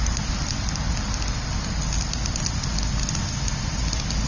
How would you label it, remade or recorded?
recorded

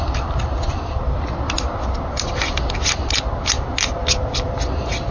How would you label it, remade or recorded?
recorded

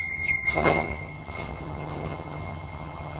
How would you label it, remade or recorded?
remade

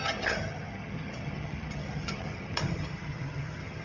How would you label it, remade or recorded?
remade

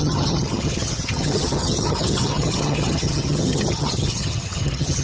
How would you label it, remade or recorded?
remade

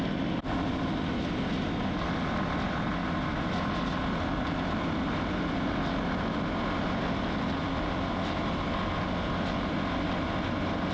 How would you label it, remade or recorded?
recorded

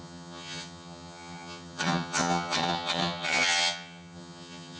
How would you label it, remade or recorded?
remade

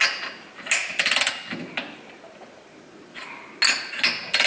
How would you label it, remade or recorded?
recorded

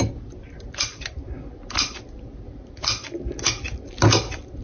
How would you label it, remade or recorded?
recorded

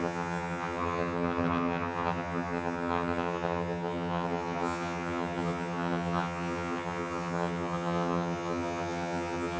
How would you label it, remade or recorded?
remade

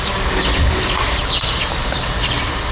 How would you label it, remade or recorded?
recorded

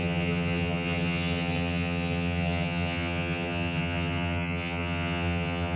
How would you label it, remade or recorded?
remade